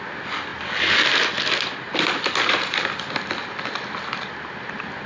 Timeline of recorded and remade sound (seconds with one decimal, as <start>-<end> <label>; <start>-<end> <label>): 0.0-5.1 recorded